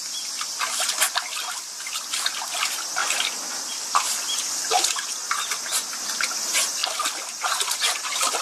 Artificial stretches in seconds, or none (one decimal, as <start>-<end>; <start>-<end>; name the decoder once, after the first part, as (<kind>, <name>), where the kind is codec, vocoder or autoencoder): 6.8-7.3 (vocoder, BigVGAN v2)